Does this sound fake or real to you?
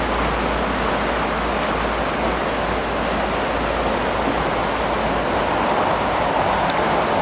real